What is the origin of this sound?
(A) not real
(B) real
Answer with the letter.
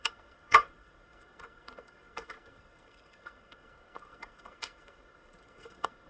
A